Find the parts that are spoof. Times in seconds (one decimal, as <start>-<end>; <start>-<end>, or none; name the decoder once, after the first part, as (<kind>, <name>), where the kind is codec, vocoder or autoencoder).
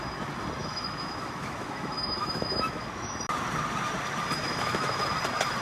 0.6-3.2 (autoencoder, DAC-VAE); 4.4-5.0